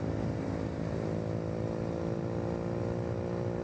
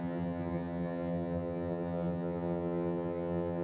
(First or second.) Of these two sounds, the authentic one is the first